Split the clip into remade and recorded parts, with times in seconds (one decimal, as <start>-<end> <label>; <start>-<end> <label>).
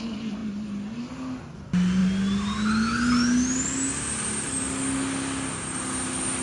0.0-6.4 recorded